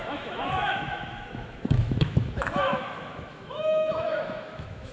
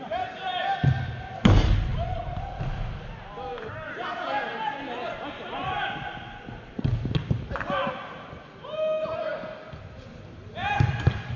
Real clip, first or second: second